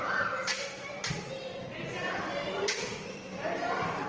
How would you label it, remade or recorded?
remade